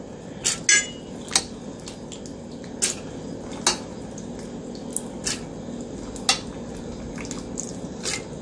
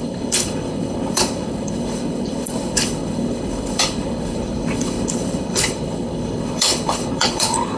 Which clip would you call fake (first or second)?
second